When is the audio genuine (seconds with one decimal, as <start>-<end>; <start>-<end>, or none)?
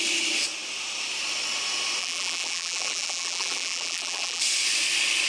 0.0-2.0; 4.4-5.3